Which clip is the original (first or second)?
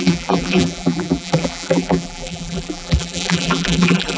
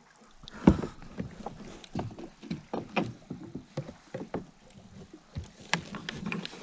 second